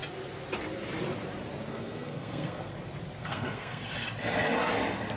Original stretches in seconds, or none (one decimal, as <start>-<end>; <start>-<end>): 0.0-1.7; 2.7-3.2; 3.8-5.2